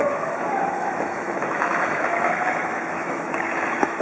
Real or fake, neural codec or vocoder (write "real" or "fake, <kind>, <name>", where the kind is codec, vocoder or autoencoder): fake, autoencoder, DAC-VAE